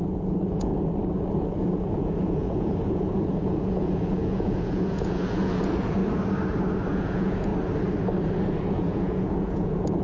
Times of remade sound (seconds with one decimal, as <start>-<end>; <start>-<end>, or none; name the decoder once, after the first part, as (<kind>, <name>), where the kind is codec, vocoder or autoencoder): 0.0-0.7 (vocoder, Vocos); 1.4-6.0; 6.9-7.5; 8.7-10.0